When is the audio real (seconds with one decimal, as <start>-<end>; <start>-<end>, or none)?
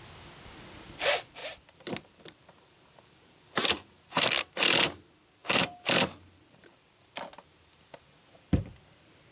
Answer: 0.0-1.4; 4.3-5.4; 8.7-9.3